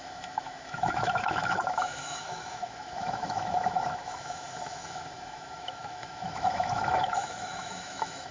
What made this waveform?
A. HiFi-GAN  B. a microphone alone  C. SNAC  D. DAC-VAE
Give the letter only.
D